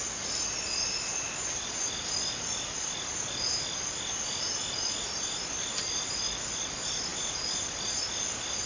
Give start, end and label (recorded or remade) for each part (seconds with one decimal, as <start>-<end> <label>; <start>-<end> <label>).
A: 0.0-8.7 recorded